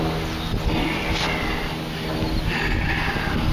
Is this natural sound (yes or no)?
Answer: yes